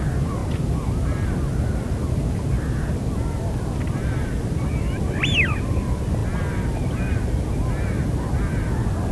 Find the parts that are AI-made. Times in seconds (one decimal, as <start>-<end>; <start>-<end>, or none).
none